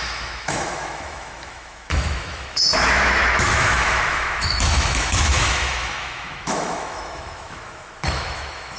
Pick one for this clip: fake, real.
fake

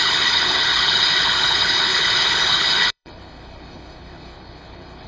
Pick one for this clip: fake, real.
fake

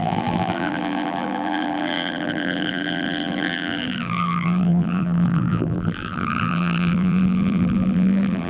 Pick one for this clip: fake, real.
fake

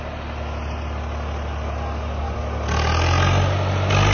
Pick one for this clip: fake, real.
real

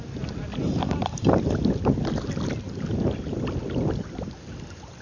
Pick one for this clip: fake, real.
real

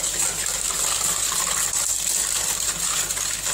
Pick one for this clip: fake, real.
real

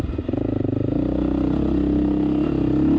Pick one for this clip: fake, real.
real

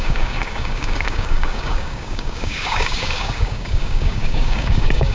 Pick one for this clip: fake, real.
fake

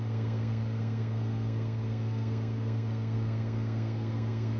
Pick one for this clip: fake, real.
fake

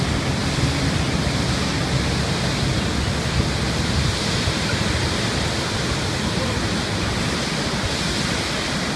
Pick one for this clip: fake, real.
real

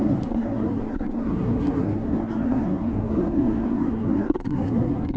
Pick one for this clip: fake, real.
fake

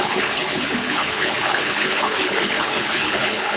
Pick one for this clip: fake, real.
fake